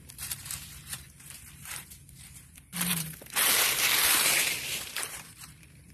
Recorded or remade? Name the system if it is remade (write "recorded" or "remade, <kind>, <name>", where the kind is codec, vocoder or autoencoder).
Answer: remade, vocoder, BigVGAN v2